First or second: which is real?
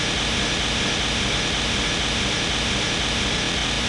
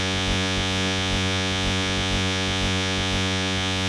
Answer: first